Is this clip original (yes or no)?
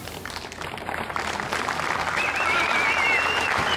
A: yes